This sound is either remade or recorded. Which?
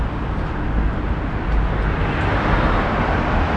recorded